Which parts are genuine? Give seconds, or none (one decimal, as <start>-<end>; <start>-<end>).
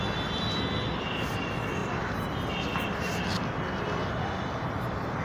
0.0-1.8; 2.3-5.2